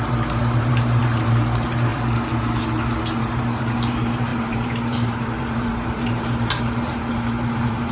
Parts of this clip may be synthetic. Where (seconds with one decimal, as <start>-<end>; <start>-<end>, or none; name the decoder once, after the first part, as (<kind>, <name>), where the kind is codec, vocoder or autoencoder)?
0.0-1.9 (vocoder, BigVGAN v2); 3.2-7.9